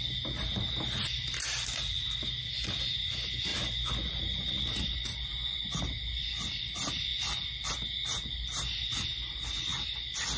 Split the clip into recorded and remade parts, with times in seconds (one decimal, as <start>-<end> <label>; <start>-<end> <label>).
0.0-10.4 recorded